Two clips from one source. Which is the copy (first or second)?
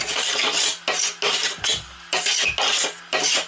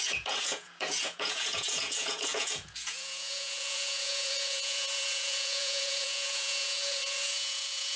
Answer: second